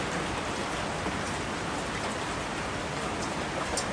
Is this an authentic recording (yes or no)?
yes